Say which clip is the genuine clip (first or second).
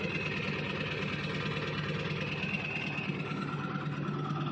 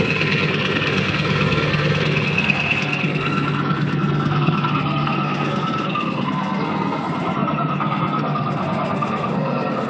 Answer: first